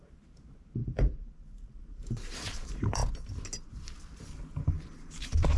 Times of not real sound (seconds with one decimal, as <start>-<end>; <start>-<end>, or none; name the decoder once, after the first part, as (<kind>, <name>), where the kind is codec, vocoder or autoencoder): 0.0-3.0 (vocoder, BigVGAN v2); 4.7-5.6